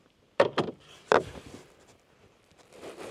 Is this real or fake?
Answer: fake